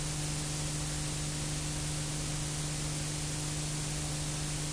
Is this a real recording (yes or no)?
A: yes